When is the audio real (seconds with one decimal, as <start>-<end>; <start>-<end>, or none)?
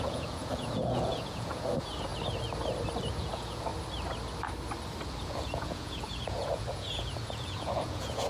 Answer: 2.1-3.1; 3.7-5.1